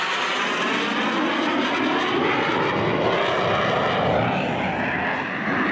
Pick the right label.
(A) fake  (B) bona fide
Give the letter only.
B